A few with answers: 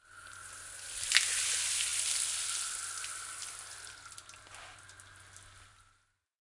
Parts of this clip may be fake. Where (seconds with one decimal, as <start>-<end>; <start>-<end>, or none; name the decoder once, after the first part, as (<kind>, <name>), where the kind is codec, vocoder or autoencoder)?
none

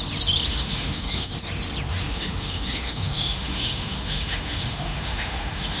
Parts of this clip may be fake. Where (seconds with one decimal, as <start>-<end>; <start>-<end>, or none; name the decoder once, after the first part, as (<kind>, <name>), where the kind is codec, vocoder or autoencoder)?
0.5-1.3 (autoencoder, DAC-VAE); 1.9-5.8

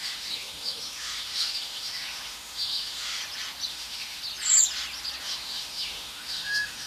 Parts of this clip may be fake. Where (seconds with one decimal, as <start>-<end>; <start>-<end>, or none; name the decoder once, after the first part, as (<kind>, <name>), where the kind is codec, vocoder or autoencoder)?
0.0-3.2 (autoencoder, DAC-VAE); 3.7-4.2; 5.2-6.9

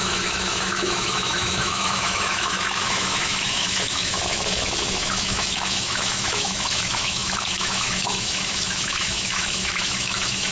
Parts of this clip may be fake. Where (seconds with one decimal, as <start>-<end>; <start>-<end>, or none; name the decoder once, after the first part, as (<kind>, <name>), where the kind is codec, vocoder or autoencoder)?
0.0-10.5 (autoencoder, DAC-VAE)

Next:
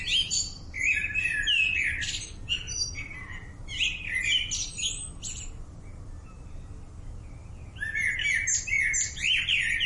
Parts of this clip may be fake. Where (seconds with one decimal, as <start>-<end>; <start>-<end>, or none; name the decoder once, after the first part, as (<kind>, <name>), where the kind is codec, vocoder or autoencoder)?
none